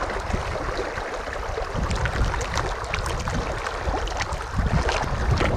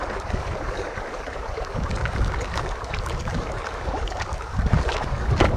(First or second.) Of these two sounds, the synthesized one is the second